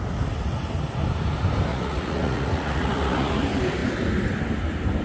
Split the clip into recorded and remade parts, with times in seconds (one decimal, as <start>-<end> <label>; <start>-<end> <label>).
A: 0.0-1.7 recorded; 1.7-3.3 remade; 3.3-5.0 recorded